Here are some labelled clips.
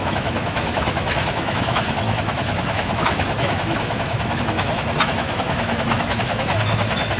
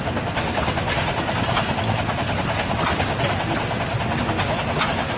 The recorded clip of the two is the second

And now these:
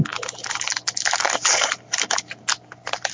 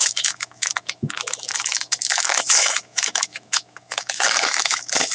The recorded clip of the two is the first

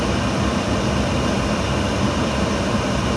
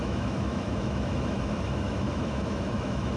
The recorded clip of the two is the first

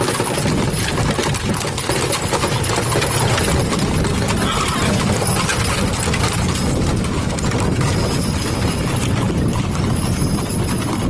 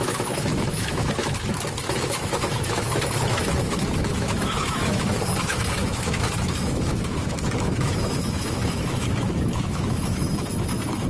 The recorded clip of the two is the first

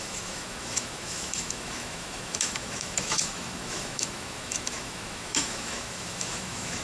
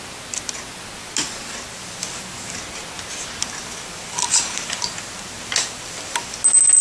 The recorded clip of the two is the second